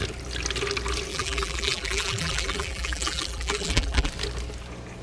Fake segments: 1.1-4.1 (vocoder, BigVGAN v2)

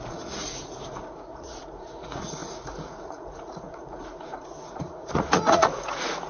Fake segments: 0.0-6.3 (vocoder, Vocos)

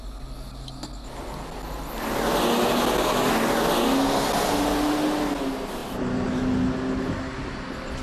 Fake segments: none

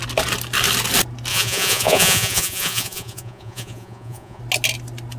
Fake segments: 1.3-4.4 (vocoder, Vocos)

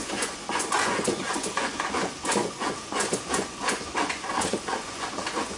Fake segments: 0.0-5.6 (vocoder, Vocos)

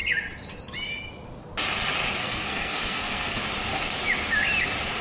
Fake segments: 2.2-3.4 (codec, SNAC)

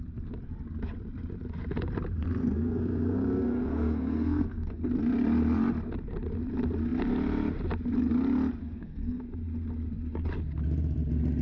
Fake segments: 2.4-4.9 (codec, SNAC); 8.6-9.2

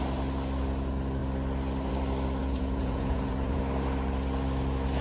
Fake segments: 2.4-3.6 (vocoder, Vocos)